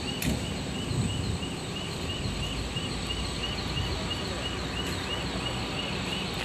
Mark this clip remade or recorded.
recorded